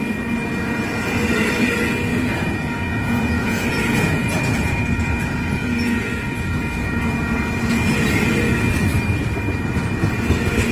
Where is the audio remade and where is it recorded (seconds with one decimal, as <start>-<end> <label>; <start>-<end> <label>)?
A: 0.0-2.1 recorded; 2.1-7.1 remade; 7.1-10.7 recorded